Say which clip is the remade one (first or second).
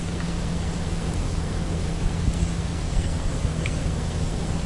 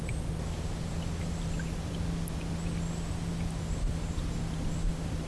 first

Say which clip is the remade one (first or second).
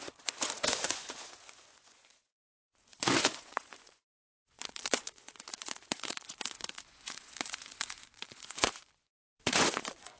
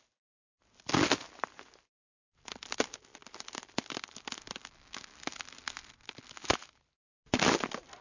first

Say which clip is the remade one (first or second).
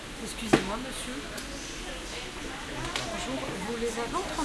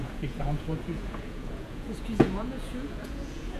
second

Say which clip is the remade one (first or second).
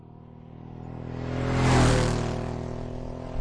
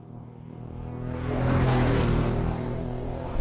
second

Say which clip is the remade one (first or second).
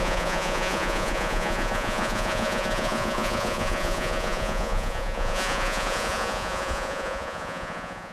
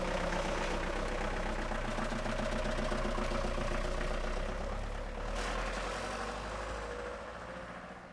first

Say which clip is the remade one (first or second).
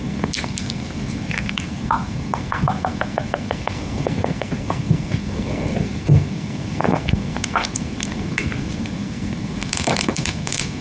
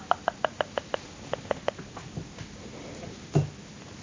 first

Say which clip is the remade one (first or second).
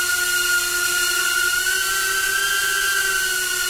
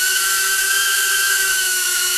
second